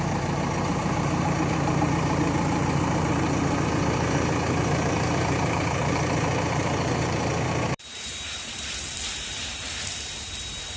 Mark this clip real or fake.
fake